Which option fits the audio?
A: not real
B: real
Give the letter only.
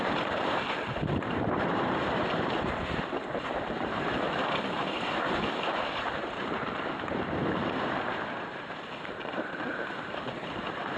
A